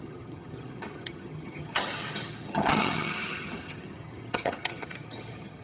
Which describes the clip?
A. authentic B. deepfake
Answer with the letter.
B